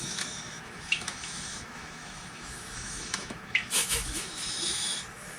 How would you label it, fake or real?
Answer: fake